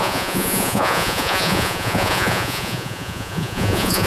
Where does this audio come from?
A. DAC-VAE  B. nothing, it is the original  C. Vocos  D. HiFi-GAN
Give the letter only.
C